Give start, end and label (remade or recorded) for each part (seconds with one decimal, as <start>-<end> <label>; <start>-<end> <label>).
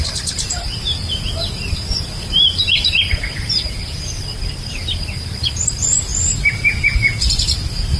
0.0-4.3 remade; 4.3-5.5 recorded; 5.5-8.0 remade